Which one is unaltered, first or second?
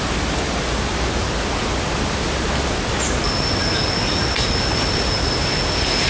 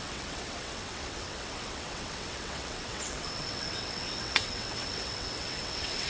first